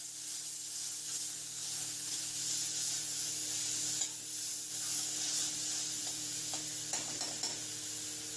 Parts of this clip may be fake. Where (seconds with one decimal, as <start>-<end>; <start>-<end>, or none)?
1.6-3.2; 6.0-6.6